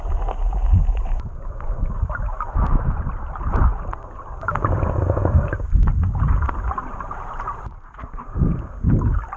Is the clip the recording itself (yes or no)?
yes